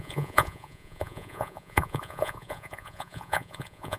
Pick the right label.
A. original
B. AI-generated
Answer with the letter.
B